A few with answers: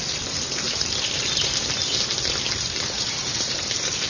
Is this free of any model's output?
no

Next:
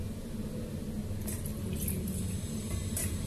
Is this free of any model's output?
yes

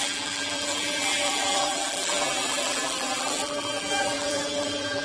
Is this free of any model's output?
no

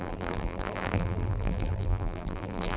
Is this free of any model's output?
no